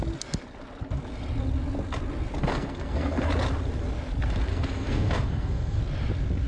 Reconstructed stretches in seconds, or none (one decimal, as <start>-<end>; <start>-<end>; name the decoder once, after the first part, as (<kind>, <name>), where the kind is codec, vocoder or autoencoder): 2.4-3.3 (codec, SNAC); 4.5-5.8